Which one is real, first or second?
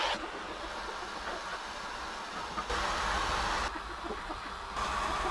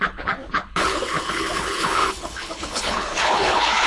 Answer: first